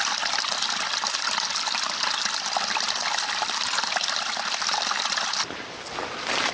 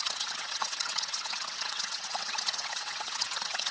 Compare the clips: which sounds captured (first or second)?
first